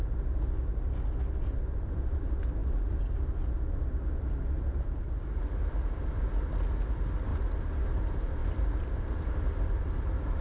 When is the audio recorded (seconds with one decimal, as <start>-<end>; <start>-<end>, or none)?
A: 0.0-8.4